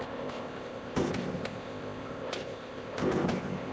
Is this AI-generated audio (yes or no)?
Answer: yes